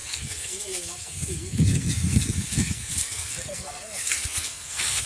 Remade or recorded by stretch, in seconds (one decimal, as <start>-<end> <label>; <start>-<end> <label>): 0.0-5.1 remade